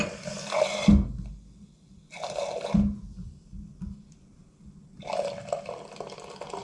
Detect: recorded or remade recorded